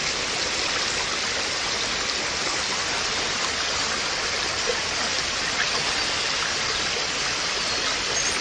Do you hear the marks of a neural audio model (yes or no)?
no